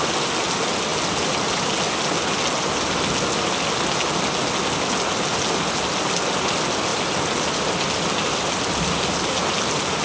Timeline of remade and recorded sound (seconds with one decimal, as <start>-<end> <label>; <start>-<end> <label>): 0.0-10.0 recorded